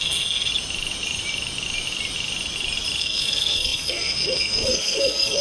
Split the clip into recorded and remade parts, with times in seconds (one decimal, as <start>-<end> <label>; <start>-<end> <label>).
0.0-0.5 remade; 0.5-3.0 recorded; 3.0-5.4 remade